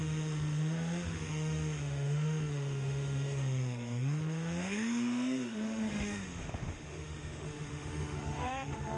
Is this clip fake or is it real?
fake